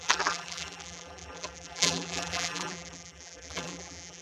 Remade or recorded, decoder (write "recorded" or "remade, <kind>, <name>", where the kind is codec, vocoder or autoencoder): remade, vocoder, BigVGAN v2